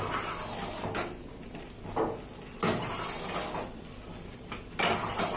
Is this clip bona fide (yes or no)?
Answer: yes